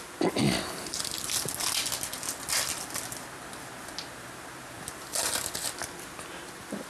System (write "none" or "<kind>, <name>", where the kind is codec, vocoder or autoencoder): none